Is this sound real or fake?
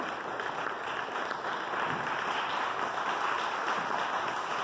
real